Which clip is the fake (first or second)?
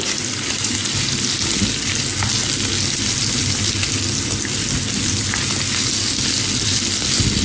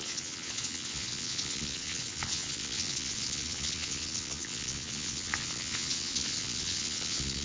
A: second